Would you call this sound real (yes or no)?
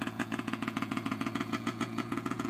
no